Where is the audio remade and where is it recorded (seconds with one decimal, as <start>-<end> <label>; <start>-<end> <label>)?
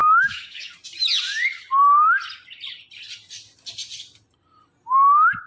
0.0-0.7 remade; 0.7-5.5 recorded